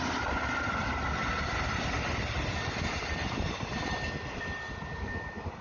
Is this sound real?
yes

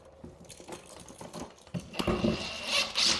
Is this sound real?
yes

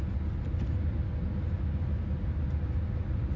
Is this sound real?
yes